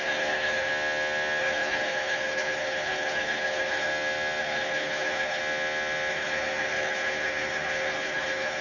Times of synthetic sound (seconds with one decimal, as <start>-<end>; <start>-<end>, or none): 0.0-0.7; 1.4-3.9; 4.4-5.4; 6.1-8.6